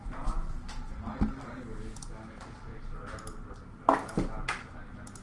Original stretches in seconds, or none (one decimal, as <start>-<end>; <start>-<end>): 0.0-5.2